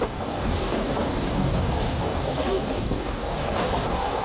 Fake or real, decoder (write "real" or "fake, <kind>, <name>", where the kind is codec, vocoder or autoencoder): fake, codec, DAC